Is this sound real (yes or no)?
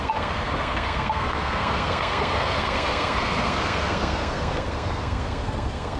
no